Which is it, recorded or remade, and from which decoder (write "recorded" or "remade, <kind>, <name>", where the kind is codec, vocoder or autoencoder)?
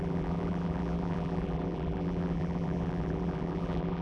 remade, vocoder, BigVGAN v2